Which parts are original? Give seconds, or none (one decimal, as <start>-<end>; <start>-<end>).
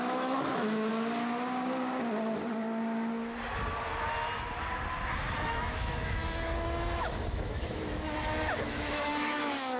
0.9-5.4